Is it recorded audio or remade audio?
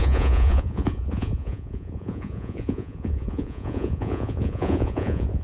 remade